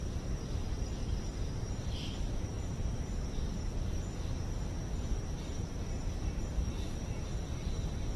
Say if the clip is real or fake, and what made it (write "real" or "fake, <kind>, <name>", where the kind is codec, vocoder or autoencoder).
fake, vocoder, BigVGAN v2